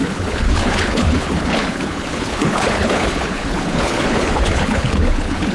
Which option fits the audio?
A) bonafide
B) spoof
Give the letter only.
B